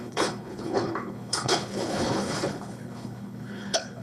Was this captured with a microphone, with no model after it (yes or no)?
no